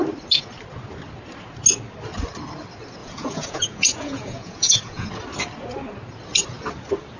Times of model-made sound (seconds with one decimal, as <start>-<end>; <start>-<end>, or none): 3.0-5.1